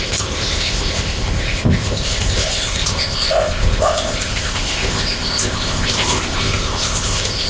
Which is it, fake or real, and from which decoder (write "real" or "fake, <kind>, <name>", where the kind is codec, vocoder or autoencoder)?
fake, codec, ZipCodec